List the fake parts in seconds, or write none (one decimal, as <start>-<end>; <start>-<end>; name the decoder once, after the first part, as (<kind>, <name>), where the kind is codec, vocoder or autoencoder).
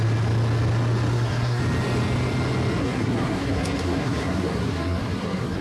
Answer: 1.1-1.6 (codec, SNAC); 2.8-5.6